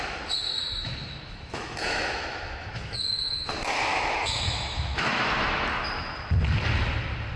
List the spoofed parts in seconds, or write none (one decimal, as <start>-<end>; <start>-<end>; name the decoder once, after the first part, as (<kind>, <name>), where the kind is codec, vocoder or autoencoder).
0.5-3.5 (autoencoder, DAC-VAE); 3.9-5.1